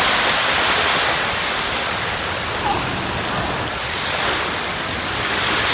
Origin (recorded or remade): recorded